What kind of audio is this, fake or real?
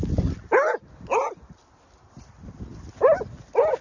real